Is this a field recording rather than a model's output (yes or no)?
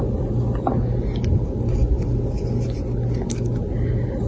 yes